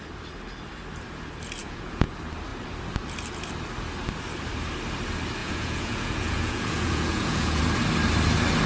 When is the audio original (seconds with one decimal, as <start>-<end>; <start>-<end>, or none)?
0.0-1.6; 2.1-5.4; 7.6-8.7